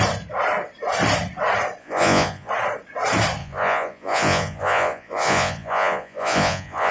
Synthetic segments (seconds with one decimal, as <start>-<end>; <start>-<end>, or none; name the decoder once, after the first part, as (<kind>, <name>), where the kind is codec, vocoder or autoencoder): 1.8-2.5 (vocoder, Vocos); 3.4-6.9